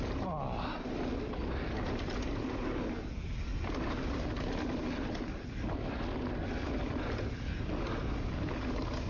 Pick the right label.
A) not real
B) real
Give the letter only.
B